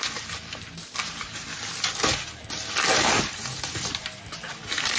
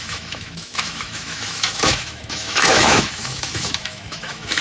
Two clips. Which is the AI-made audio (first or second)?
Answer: second